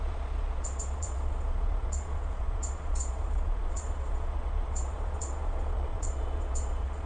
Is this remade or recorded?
remade